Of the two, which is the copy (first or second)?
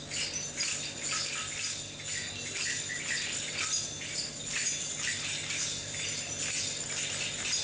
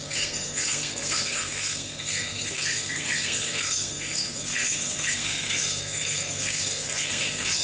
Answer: second